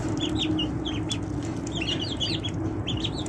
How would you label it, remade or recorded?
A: recorded